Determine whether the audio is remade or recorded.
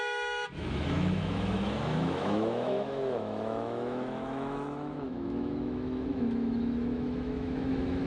remade